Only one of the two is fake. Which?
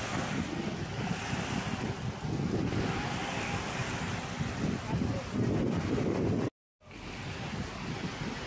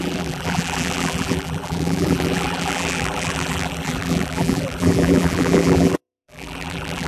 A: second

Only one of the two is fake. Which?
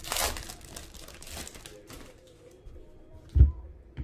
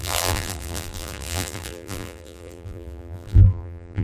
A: second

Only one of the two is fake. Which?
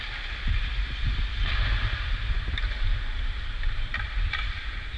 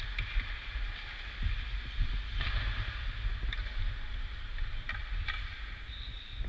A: first